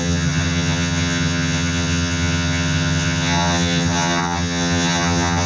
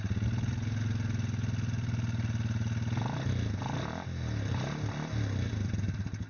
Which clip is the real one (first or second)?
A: second